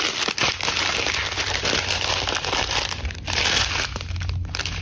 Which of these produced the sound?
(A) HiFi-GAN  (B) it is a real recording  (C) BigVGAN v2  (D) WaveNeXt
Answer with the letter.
B